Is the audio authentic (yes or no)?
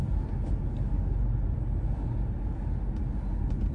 yes